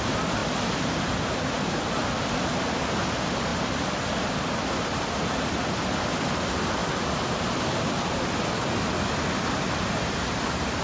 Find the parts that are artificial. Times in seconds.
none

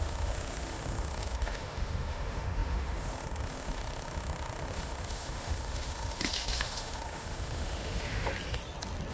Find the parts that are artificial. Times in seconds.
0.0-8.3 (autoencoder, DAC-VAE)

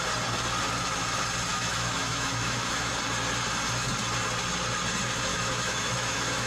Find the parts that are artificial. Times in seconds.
1.5-2.9 (autoencoder, DAC-VAE); 5.3-6.5

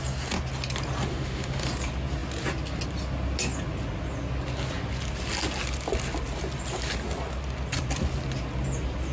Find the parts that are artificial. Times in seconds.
1.1-1.7 (autoencoder, DAC-VAE)

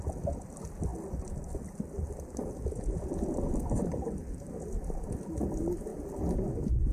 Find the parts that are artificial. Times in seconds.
none

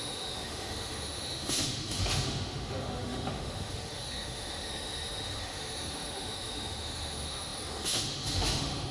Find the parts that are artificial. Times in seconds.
0.0-8.9 (autoencoder, DAC-VAE)